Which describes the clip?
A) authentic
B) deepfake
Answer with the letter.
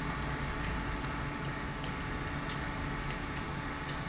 A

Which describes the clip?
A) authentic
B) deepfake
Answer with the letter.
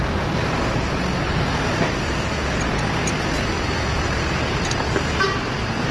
A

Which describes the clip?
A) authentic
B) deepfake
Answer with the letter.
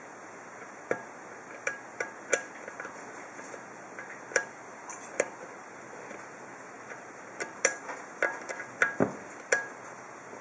B